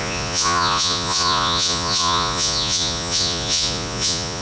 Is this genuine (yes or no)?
no